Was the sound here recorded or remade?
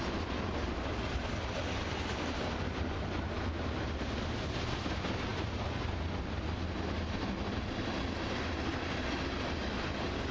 recorded